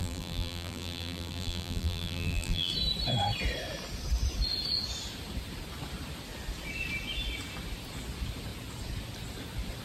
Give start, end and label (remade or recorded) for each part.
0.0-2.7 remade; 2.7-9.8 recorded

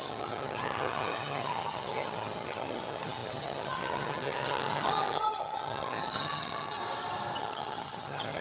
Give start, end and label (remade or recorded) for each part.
0.0-6.8 remade; 6.8-7.4 recorded; 7.4-8.4 remade